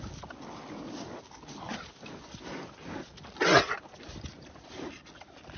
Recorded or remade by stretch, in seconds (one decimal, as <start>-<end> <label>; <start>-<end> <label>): 0.0-5.6 recorded